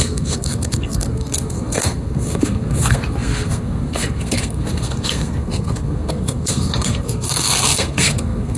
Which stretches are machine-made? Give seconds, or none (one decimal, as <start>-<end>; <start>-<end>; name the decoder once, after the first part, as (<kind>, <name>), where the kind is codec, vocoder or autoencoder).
0.0-8.6 (codec, SNAC)